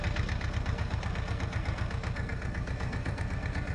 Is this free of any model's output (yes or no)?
no